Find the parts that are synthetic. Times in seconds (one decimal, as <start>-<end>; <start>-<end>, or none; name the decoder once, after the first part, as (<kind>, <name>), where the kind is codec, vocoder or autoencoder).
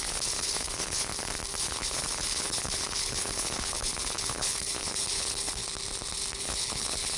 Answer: 0.0-1.1 (codec, HILCodec); 1.6-5.6; 6.4-7.2